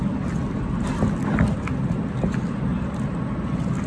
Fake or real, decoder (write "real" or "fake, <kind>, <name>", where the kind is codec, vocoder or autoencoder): real